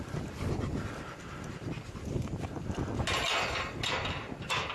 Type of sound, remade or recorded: recorded